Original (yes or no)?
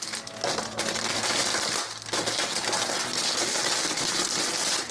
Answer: yes